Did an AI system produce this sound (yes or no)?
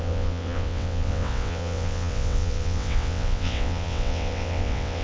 yes